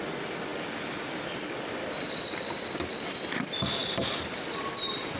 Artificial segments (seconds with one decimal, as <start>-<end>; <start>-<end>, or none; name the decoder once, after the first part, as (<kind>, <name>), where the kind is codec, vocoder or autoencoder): none